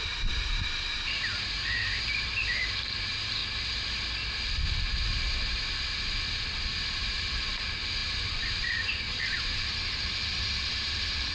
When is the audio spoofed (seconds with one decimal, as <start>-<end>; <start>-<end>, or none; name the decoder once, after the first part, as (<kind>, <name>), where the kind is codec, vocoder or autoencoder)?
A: 0.0-3.4 (vocoder, BigVGAN v2); 6.9-11.3